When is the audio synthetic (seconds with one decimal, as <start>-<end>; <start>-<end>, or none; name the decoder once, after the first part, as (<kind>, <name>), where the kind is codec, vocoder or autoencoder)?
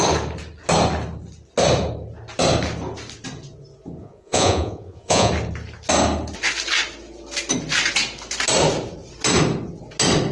4.0-5.3 (vocoder, Vocos)